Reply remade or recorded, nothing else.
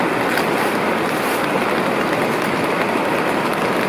recorded